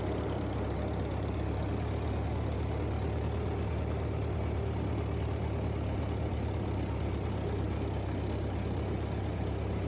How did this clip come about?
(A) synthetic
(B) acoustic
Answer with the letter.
B